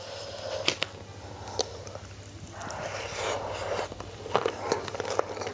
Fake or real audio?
fake